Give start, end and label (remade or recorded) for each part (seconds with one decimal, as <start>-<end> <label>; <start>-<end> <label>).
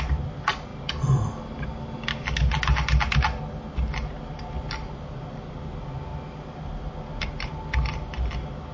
0.0-8.7 recorded